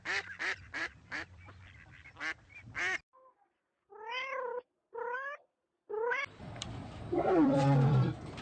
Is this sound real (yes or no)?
no